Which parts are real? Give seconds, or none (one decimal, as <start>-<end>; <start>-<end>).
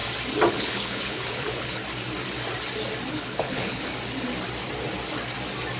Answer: 0.0-0.5; 1.8-3.1; 3.9-5.8